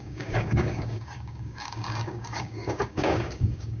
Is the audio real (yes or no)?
no